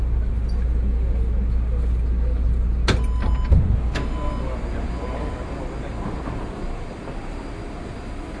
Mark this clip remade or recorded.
recorded